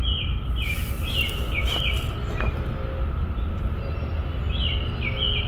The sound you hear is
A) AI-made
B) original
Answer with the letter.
B